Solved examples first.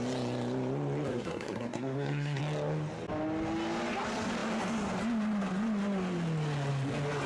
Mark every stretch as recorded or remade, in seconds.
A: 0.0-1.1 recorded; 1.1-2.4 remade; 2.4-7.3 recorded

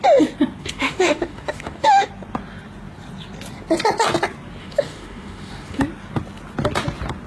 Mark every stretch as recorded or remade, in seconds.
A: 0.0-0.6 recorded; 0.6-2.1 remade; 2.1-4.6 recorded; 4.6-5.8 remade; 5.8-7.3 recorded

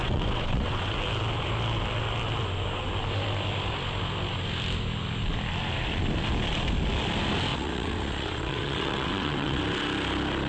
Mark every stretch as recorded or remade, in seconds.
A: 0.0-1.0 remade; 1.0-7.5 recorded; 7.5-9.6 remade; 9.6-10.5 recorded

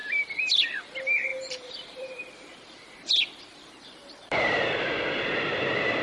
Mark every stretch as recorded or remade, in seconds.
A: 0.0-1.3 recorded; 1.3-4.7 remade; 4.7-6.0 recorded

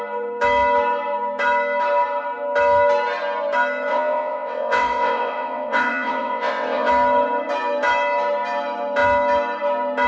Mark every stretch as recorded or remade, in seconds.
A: 0.0-3.9 recorded; 3.9-6.9 remade; 6.9-10.1 recorded

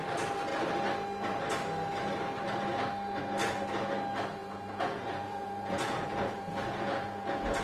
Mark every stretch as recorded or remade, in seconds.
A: 0.0-4.4 recorded; 4.4-7.6 remade

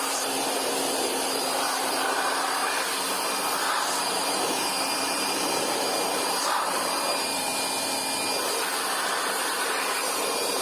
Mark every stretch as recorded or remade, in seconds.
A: 0.0-2.6 remade; 2.6-3.7 recorded; 3.7-7.5 remade; 7.5-9.2 recorded; 9.2-10.6 remade